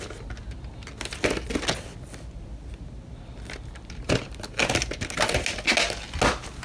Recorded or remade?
recorded